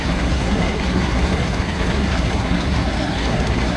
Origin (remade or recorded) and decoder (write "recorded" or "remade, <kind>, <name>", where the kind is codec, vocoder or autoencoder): remade, codec, SNAC